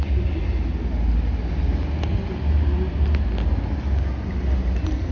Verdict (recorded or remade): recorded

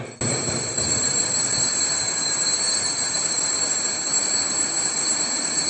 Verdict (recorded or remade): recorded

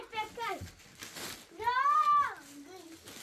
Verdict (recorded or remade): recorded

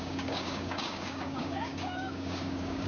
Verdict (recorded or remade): remade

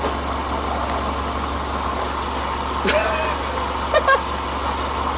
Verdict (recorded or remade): recorded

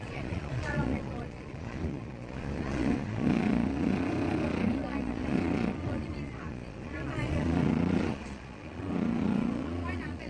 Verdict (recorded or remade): remade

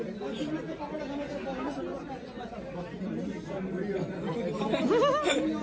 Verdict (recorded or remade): recorded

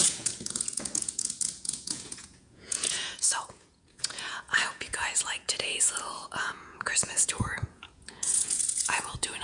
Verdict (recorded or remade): remade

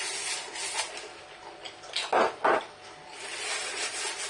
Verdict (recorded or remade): recorded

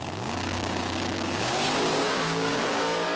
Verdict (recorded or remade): remade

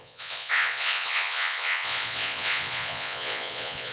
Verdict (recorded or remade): remade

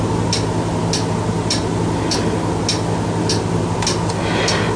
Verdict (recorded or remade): recorded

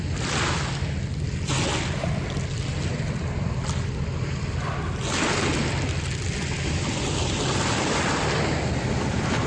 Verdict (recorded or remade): recorded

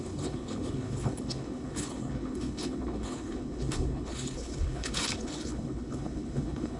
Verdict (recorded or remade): remade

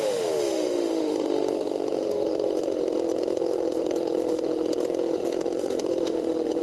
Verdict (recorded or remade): remade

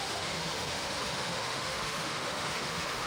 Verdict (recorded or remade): remade